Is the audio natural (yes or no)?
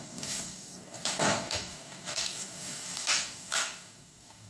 no